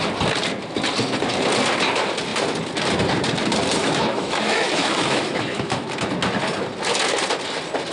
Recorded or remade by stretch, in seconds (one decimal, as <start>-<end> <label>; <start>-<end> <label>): 0.0-3.8 recorded; 3.8-5.9 remade; 5.9-7.9 recorded